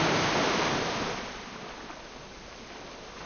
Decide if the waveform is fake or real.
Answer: real